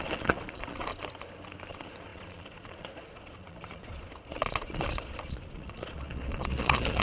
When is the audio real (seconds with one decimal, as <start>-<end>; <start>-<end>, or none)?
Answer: 0.9-1.7